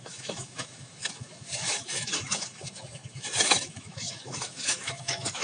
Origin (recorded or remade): remade